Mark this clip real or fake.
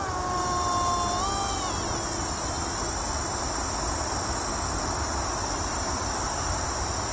real